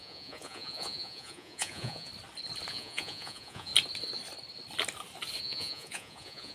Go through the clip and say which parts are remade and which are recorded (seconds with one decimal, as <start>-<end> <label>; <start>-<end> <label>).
0.0-2.1 remade; 2.1-2.7 recorded; 2.7-3.7 remade; 3.7-5.4 recorded; 5.4-6.5 remade